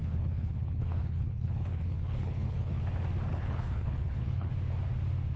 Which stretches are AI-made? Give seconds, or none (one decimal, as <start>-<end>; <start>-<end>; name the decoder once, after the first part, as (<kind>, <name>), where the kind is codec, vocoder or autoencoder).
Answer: 0.0-2.8 (codec, HILCodec); 3.3-4.5